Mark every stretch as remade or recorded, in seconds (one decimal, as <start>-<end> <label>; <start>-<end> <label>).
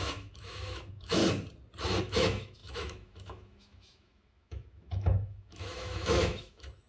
0.0-1.2 remade; 1.2-2.0 recorded; 2.0-6.9 remade